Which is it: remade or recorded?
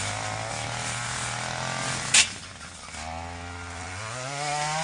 recorded